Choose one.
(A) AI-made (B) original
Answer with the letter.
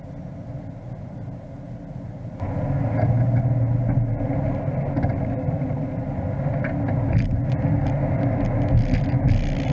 B